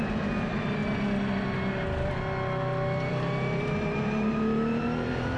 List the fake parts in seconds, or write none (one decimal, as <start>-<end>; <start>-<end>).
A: 0.0-0.8; 3.1-5.4